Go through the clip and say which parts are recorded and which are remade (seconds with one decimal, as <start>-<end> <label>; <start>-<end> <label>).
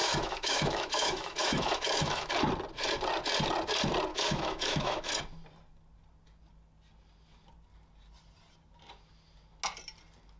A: 0.0-2.3 remade; 2.3-4.1 recorded; 4.1-5.1 remade; 5.1-10.4 recorded